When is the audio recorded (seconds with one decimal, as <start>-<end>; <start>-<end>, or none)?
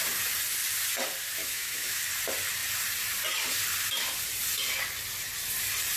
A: 0.0-1.4; 2.0-6.0